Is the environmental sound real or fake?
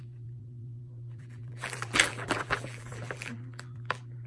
fake